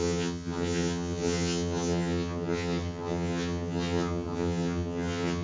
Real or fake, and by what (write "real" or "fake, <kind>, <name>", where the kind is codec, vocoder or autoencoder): fake, vocoder, HiFi-GAN